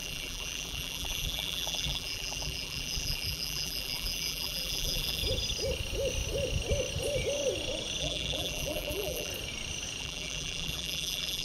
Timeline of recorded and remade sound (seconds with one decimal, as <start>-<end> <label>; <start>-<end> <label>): 0.0-5.2 remade; 5.2-8.0 recorded; 8.0-9.3 remade; 9.3-10.0 recorded; 10.0-11.4 remade